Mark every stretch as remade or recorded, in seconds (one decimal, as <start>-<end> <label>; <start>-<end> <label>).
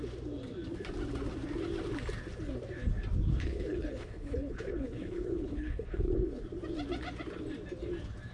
0.0-3.3 recorded; 3.3-6.4 remade; 6.4-8.3 recorded